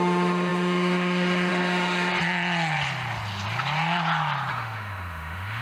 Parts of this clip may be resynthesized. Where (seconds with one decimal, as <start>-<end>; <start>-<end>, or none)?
0.0-2.1; 4.5-5.6